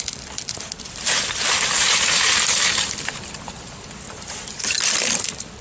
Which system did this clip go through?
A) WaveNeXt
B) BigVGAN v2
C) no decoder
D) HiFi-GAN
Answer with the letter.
B